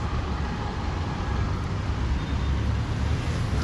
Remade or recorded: recorded